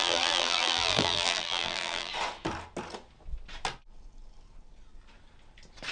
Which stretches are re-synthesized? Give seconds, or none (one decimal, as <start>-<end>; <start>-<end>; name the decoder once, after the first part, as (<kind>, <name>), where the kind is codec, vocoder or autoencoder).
0.0-2.1 (vocoder, BigVGAN v2)